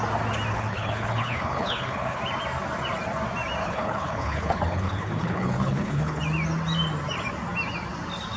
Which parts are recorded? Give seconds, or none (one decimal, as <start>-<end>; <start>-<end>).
0.0-0.5; 2.2-3.6; 6.2-8.4